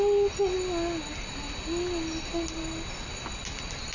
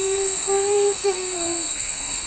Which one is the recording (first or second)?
first